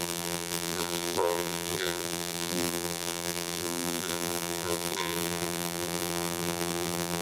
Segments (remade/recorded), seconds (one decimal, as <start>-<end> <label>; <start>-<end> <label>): 0.0-7.2 remade